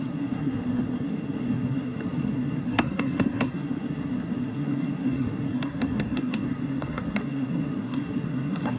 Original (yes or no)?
no